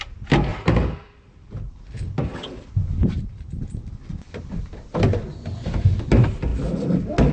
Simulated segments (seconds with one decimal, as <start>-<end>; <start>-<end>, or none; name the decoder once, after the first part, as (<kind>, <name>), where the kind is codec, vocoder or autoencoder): 0.5-4.0 (vocoder, BigVGAN v2)